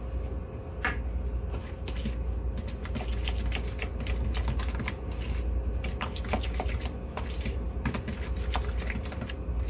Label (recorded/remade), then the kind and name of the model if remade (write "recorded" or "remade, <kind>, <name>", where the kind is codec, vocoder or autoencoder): recorded